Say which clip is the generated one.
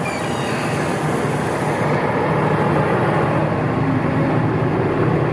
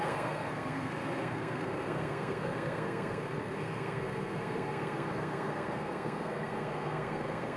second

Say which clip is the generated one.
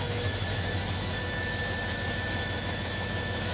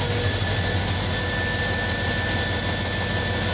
first